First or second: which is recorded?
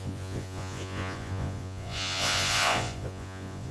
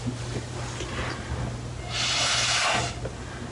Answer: second